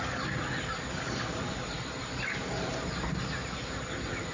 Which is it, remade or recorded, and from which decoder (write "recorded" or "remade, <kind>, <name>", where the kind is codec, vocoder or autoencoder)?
recorded